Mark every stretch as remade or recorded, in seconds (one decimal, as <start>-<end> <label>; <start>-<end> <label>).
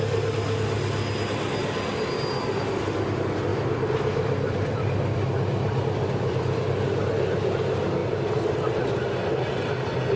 0.0-3.5 recorded; 3.5-6.6 remade; 6.6-10.2 recorded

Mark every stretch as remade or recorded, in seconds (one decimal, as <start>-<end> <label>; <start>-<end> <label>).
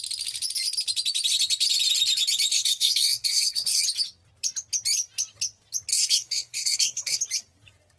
0.0-2.5 recorded; 2.5-3.8 remade; 3.8-5.9 recorded; 5.9-7.2 remade; 7.2-8.0 recorded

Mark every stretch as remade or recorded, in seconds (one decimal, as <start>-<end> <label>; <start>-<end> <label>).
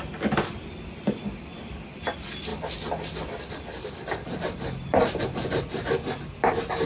0.0-2.5 recorded; 2.5-5.2 remade; 5.2-6.9 recorded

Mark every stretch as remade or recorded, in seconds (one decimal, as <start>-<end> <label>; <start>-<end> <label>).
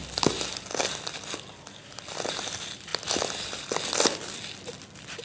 0.0-5.2 recorded